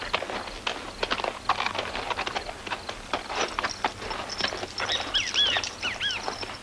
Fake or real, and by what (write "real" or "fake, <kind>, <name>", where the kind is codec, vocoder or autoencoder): real